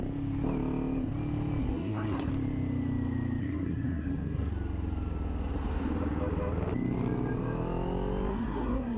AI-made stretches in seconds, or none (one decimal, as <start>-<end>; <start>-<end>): 1.6-2.3; 3.4-4.5; 8.3-9.0